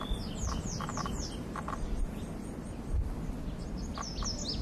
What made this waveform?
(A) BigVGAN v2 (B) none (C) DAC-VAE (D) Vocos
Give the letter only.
B